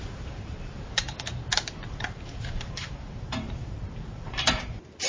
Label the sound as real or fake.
fake